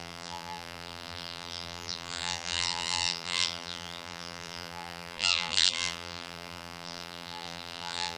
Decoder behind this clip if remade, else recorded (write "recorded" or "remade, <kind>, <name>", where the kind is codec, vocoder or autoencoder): remade, vocoder, BigVGAN v2